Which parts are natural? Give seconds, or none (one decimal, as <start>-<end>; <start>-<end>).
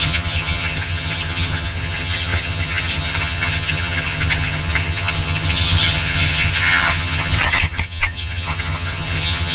none